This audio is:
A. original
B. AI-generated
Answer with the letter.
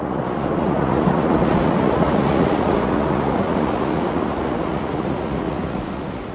B